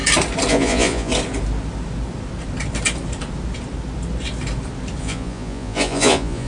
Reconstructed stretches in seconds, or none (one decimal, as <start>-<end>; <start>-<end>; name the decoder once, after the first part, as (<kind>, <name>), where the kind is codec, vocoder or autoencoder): 0.5-1.1 (vocoder, Vocos); 5.0-6.5